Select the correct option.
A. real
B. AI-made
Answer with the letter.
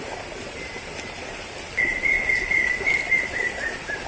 A